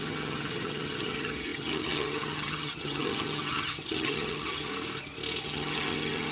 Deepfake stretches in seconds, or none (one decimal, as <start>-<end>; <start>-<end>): 0.0-4.7; 5.4-6.3